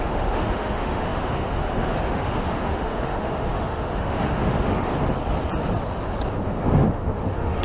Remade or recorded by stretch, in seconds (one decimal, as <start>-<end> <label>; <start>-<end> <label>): 0.0-4.9 remade; 4.9-6.3 recorded; 6.3-7.6 remade